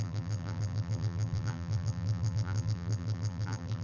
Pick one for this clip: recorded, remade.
remade